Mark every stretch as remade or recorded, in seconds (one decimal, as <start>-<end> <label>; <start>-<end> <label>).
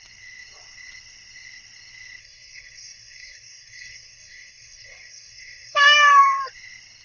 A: 0.0-2.2 recorded; 2.2-6.4 remade; 6.4-7.0 recorded